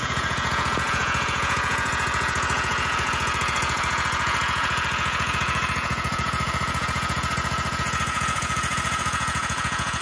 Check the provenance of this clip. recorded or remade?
remade